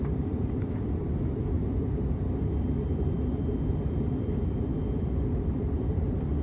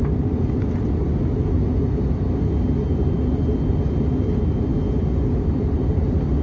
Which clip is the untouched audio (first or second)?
second